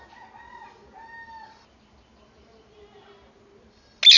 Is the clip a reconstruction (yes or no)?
no